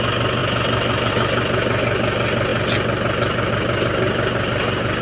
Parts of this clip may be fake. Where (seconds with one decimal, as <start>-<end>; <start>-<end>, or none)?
none